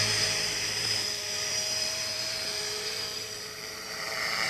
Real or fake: fake